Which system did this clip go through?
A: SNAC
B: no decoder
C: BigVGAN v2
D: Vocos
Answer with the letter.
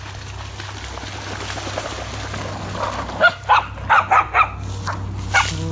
B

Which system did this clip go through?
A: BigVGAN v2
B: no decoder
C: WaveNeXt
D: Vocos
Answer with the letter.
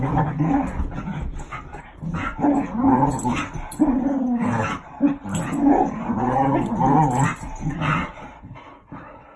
B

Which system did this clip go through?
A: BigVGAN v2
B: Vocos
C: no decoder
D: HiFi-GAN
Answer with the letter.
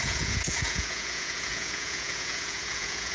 B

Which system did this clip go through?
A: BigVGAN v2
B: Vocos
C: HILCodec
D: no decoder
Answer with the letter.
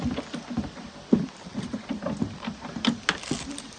D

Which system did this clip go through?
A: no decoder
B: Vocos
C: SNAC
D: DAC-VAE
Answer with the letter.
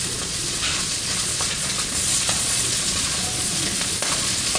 B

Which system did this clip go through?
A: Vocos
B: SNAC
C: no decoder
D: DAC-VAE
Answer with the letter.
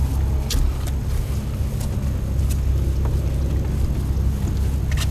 C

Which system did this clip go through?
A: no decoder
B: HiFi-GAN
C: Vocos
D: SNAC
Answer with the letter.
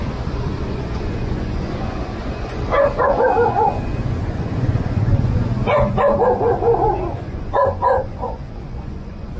C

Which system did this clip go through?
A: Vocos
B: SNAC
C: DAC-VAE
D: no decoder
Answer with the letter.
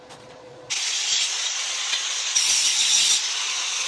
A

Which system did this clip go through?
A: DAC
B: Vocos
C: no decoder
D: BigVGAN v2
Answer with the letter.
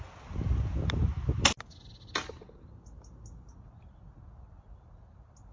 C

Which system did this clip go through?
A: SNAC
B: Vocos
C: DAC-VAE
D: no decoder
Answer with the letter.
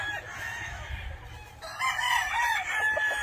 D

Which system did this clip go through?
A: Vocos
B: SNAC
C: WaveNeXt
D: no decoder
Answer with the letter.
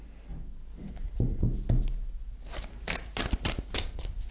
D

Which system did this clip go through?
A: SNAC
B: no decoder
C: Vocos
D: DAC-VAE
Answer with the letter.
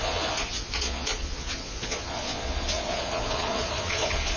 C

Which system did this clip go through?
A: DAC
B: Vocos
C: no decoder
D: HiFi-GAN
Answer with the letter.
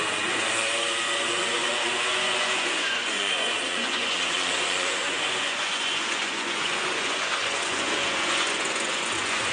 B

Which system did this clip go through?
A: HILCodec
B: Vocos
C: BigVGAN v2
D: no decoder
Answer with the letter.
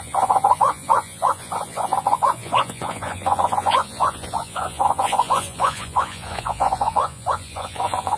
B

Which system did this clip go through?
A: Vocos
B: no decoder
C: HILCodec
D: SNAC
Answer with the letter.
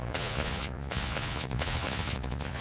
A